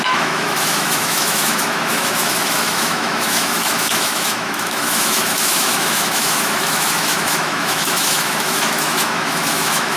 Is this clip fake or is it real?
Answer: fake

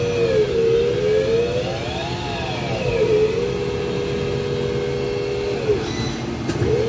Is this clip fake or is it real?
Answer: real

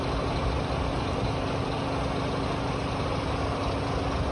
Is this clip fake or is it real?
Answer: real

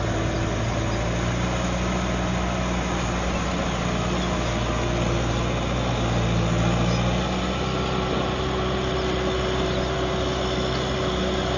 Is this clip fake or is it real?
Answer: real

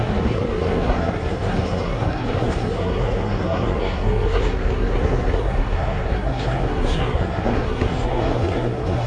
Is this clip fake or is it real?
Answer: fake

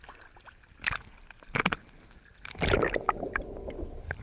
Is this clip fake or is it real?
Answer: real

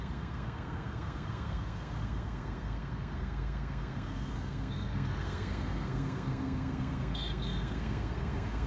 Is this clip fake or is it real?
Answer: fake